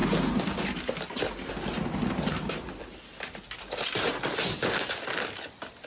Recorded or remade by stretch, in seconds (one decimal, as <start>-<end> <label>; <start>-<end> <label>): 0.0-5.9 recorded